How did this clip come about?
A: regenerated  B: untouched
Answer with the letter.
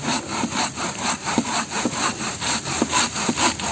B